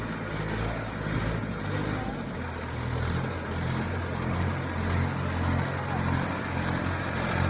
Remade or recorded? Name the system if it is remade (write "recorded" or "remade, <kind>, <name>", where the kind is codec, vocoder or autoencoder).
recorded